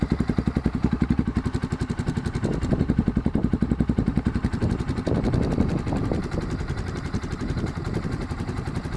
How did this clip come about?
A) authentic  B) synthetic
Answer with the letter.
B